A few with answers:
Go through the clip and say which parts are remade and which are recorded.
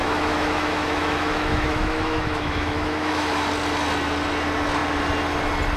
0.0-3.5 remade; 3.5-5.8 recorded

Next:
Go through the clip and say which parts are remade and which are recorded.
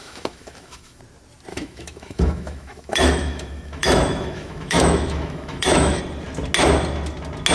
0.0-1.0 remade; 1.0-1.5 recorded; 1.5-6.0 remade; 6.0-7.5 recorded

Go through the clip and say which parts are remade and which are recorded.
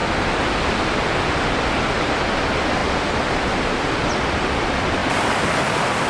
0.0-6.1 recorded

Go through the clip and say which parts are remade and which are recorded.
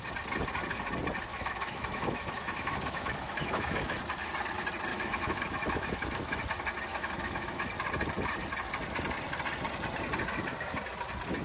0.0-1.3 recorded; 1.3-4.0 remade; 4.0-4.9 recorded; 4.9-6.4 remade; 6.4-6.9 recorded; 6.9-7.6 remade; 7.6-11.4 recorded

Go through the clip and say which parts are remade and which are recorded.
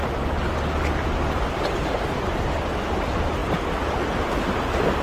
0.0-5.0 recorded